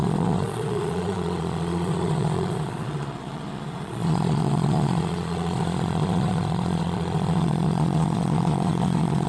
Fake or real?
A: fake